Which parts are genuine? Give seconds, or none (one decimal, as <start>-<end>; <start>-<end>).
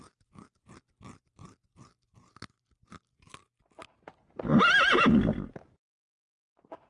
0.0-6.9